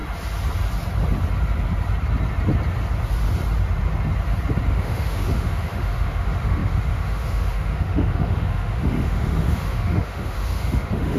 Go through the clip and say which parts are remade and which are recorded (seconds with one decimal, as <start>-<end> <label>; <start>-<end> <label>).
0.0-4.7 recorded; 4.7-11.2 remade